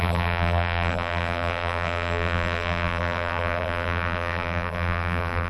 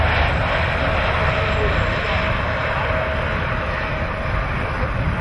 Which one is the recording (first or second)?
second